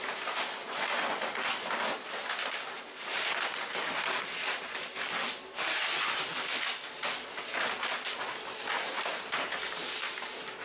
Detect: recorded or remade recorded